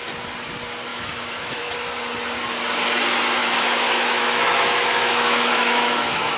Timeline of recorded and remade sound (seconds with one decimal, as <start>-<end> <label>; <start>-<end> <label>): 0.0-0.9 recorded; 0.9-1.6 remade; 1.6-3.4 recorded; 3.4-6.4 remade